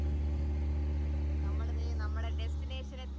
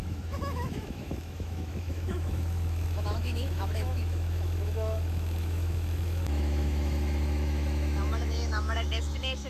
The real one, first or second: first